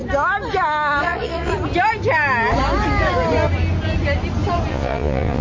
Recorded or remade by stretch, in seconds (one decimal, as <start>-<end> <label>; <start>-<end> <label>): 0.0-1.0 recorded; 1.0-1.5 remade; 1.5-4.7 recorded; 4.7-5.4 remade